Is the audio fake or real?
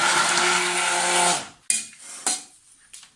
real